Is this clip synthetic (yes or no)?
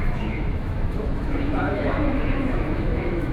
yes